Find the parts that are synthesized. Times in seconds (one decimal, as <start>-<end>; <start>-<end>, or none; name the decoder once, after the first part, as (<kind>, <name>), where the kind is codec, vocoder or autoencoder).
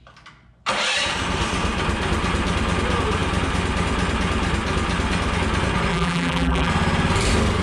5.9-6.7 (vocoder, BigVGAN v2)